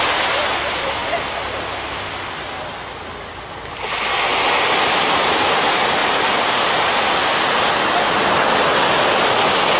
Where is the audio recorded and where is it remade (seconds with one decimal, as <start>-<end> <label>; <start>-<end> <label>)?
0.0-9.8 recorded